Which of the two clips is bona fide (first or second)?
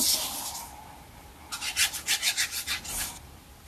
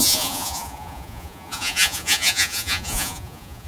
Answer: first